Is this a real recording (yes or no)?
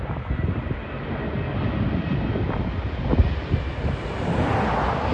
yes